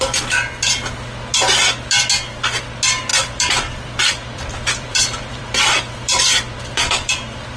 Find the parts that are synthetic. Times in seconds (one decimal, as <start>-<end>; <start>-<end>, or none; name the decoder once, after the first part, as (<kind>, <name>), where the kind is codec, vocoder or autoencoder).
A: 3.1-7.6 (vocoder, BigVGAN v2)